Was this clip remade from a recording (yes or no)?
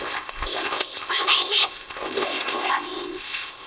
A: yes